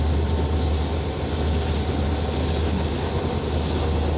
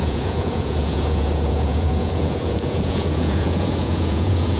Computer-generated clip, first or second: second